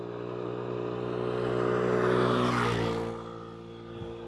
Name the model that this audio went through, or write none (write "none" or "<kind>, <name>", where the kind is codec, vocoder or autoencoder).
none